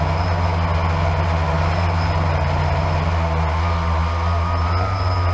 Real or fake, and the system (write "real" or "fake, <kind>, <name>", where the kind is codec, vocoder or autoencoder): real